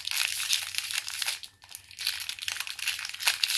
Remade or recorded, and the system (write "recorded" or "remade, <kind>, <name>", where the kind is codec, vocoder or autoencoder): recorded